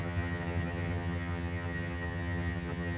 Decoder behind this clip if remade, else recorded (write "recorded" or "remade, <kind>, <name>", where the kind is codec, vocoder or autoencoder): remade, vocoder, HiFi-GAN